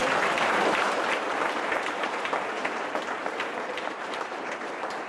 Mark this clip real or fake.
fake